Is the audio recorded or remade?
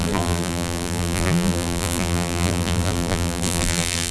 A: remade